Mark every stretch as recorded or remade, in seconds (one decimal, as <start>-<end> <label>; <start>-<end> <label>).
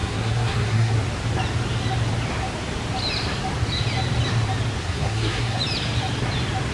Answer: 0.0-0.9 remade; 0.9-4.8 recorded; 4.8-5.6 remade; 5.6-6.7 recorded